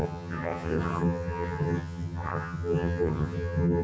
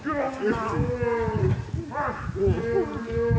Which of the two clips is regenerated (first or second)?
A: first